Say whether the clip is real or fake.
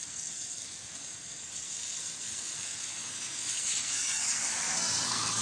fake